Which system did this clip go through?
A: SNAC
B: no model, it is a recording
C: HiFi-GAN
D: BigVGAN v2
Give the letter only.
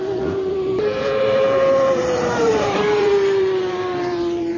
D